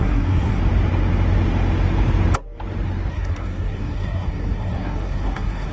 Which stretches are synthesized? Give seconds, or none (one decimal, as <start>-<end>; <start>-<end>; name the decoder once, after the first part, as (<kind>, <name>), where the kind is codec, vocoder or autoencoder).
0.0-0.6 (codec, SNAC); 3.1-5.7